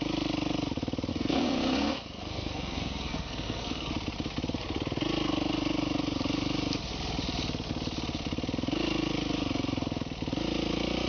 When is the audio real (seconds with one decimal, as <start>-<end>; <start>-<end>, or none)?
0.0-1.1; 3.9-11.1